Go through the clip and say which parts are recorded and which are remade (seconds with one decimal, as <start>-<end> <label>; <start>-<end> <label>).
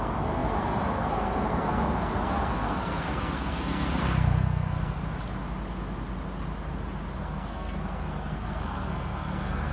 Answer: 0.0-5.0 remade; 5.0-7.2 recorded; 7.2-9.7 remade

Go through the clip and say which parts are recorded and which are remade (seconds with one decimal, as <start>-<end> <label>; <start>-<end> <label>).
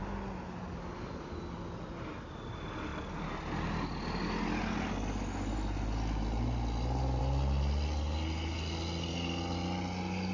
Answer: 0.0-10.3 recorded